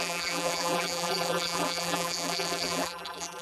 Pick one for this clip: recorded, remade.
remade